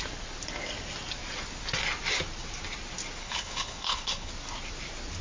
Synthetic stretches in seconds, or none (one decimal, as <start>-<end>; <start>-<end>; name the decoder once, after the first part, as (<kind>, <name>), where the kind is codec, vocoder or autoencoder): 3.2-4.3 (codec, HILCodec)